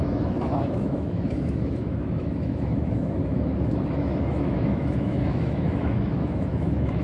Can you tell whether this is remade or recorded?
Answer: remade